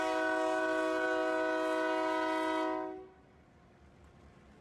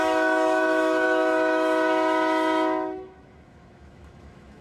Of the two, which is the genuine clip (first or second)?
first